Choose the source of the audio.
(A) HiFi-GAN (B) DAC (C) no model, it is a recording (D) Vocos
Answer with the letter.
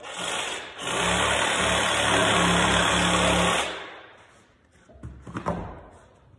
C